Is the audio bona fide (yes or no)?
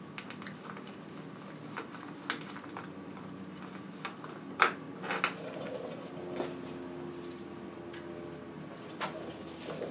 yes